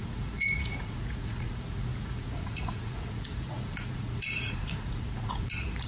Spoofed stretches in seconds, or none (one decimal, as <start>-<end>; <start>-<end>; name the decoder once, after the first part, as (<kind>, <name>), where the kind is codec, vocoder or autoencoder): 0.0-5.9 (vocoder, Vocos)